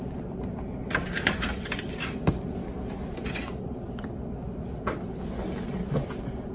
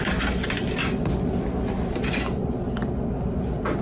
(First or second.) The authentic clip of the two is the second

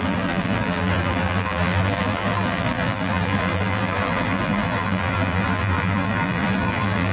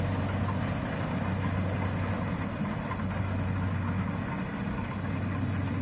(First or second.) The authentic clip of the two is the second